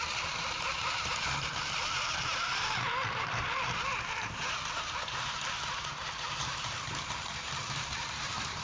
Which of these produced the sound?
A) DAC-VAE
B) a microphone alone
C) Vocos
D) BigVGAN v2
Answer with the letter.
D